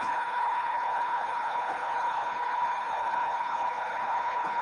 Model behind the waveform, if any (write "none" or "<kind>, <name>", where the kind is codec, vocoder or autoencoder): codec, HILCodec